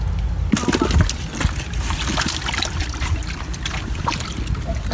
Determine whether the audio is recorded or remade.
recorded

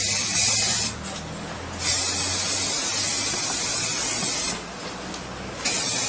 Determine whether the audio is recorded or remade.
recorded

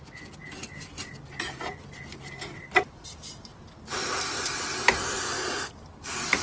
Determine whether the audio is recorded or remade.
recorded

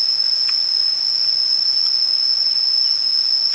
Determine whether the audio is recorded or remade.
recorded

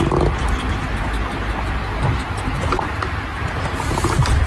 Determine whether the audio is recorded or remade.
recorded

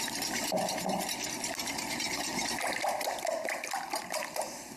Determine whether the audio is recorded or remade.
recorded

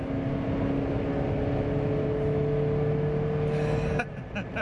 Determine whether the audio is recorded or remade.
recorded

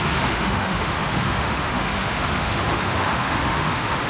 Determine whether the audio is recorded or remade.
remade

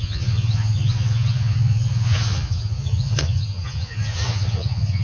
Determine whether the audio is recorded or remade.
remade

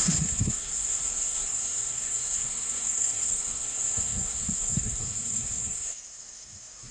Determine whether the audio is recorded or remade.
remade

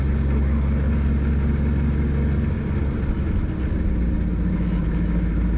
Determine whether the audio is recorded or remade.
recorded